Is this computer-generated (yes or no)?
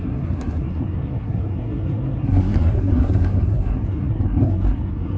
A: yes